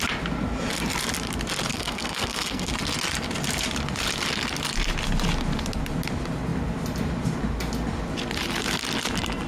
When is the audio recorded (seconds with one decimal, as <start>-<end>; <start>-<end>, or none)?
0.0-1.7; 2.7-9.5